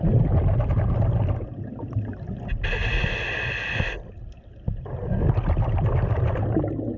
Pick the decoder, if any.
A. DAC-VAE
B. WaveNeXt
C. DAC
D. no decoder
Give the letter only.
D